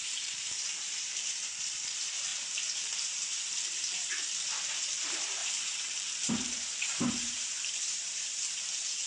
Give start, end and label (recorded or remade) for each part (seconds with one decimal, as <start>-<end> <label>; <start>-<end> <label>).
0.0-4.1 remade; 4.1-4.9 recorded; 4.9-9.1 remade